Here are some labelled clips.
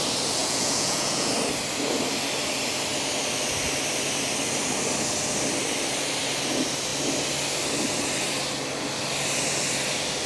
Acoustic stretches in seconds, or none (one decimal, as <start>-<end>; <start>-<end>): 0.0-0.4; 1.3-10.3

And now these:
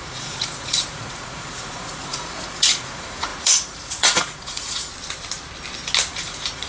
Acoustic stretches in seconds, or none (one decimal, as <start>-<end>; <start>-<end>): 4.9-6.1

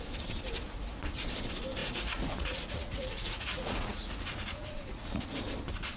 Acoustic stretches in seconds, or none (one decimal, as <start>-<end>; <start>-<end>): 0.0-1.8; 5.4-6.0